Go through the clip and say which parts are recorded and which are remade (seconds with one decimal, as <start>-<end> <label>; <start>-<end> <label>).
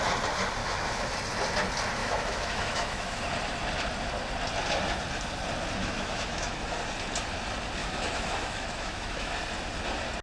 0.0-0.6 recorded; 0.6-1.1 remade; 1.1-2.0 recorded; 2.0-3.2 remade; 3.2-5.8 recorded; 5.8-6.8 remade; 6.8-7.8 recorded; 7.8-9.3 remade; 9.3-10.2 recorded